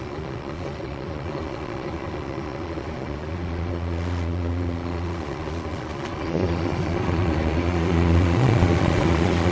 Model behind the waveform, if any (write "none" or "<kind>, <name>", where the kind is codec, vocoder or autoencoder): vocoder, Vocos